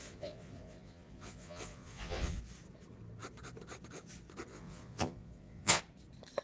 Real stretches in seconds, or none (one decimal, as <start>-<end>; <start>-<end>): 2.4-4.5; 5.8-6.4